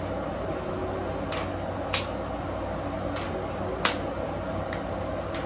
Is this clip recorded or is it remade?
recorded